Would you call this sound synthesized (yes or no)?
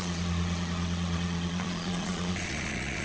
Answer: yes